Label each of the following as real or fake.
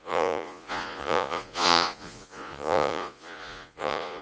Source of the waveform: fake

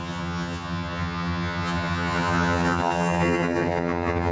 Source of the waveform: fake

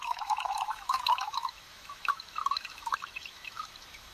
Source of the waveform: fake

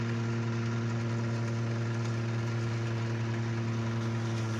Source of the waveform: real